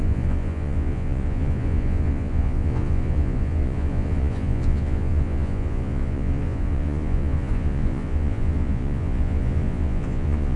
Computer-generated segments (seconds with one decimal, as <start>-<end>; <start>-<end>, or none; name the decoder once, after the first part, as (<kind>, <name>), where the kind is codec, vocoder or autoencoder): 0.0-10.6 (vocoder, Vocos)